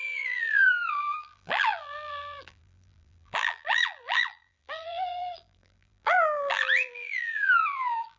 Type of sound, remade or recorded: remade